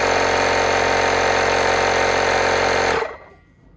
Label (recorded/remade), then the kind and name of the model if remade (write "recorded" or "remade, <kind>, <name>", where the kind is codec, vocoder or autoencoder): recorded